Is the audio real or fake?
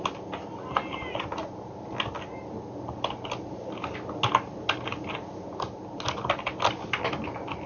real